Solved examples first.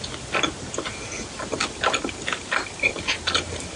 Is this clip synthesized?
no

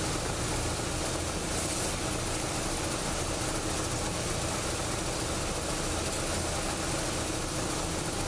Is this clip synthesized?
no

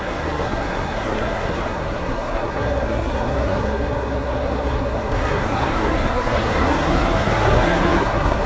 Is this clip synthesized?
yes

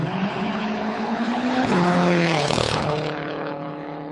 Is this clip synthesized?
yes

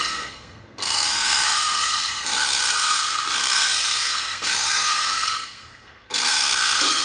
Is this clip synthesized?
yes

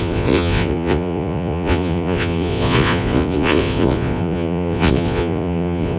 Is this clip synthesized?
yes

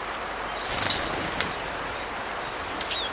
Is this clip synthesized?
no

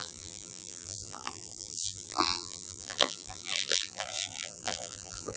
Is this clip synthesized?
yes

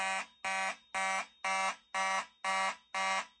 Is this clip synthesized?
no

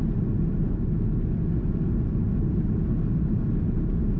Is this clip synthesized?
no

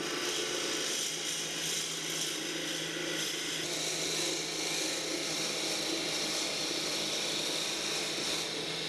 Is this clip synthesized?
no